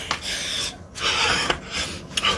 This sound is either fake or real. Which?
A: real